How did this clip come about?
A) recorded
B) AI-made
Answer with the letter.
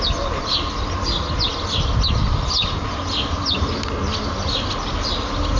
A